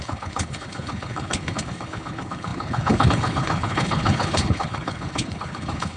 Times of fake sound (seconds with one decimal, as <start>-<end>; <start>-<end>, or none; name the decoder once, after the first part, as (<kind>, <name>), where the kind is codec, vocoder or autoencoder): 0.0-6.0 (codec, HILCodec)